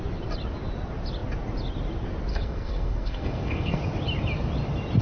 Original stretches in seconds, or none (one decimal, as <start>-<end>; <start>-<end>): 0.0-2.3; 3.8-5.0